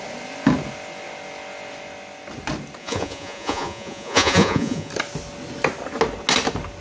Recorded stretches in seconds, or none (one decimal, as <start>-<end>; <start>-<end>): 0.0-2.8; 4.9-6.8